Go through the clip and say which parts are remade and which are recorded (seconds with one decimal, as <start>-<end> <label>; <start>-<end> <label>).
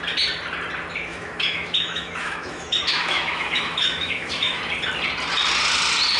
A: 0.0-1.1 recorded; 1.1-4.6 remade; 4.6-6.2 recorded